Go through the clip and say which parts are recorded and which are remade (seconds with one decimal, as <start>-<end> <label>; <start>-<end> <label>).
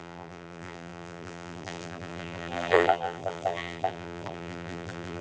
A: 0.0-5.2 remade